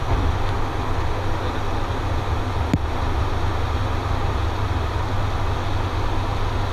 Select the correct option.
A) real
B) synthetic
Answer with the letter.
A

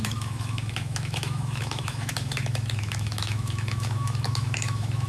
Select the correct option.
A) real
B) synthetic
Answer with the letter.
B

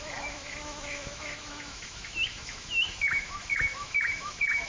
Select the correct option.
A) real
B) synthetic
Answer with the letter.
B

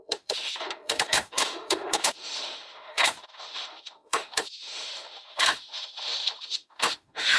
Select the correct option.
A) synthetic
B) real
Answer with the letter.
A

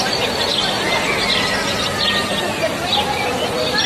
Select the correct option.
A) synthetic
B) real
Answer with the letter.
B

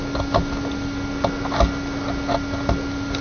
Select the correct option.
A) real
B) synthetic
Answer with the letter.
A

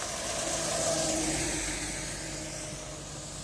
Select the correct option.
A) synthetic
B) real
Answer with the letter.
B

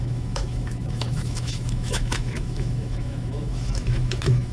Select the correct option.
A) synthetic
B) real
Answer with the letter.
A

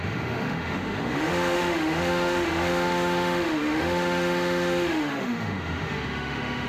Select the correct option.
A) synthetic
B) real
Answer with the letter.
A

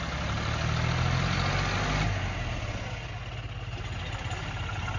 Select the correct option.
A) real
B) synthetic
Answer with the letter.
A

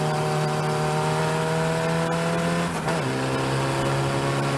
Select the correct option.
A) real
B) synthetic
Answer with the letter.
A